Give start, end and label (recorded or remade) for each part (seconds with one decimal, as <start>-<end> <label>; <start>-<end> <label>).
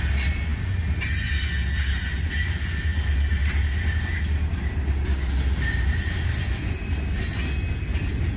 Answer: 0.0-8.4 recorded